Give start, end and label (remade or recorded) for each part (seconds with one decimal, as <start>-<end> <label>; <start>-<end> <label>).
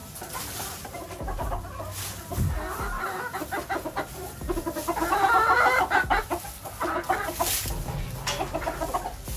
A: 0.0-9.4 recorded